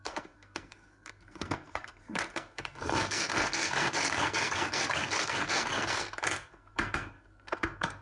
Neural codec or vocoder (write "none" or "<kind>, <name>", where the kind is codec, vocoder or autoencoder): codec, SNAC